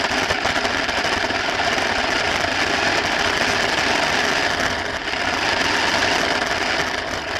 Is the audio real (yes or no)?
yes